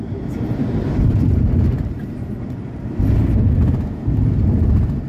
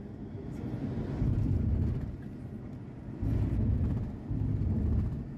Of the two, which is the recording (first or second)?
second